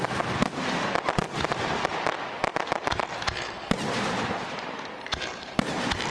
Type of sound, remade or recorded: recorded